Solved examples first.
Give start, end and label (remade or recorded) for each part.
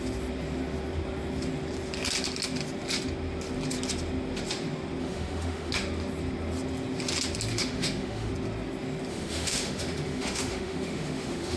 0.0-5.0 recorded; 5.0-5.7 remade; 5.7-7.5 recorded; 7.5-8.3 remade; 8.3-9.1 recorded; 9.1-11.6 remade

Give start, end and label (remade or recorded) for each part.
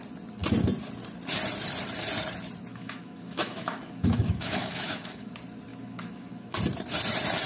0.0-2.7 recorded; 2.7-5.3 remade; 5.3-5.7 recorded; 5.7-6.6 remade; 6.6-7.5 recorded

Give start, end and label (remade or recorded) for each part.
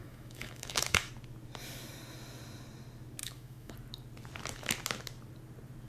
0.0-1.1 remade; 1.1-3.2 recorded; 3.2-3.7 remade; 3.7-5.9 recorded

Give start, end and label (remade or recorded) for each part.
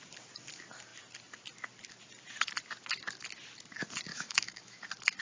0.0-4.1 recorded; 4.1-4.8 remade; 4.8-5.2 recorded